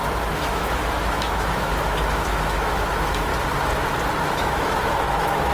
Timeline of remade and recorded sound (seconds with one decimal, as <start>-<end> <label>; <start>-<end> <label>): 0.0-3.3 remade; 3.3-4.2 recorded; 4.2-5.5 remade